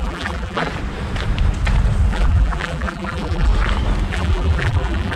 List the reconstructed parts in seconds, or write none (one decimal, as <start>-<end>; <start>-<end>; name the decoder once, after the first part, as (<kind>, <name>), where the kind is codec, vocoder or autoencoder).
0.0-0.7 (vocoder, BigVGAN v2); 2.1-3.5; 4.1-5.2